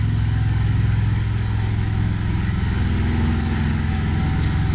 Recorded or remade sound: remade